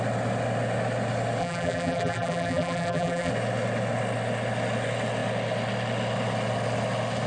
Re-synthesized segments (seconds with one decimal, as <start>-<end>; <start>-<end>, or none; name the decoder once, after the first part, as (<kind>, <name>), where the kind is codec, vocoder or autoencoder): 1.4-3.3 (vocoder, BigVGAN v2)